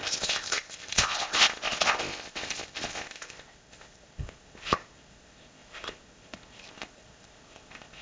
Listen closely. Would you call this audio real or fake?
fake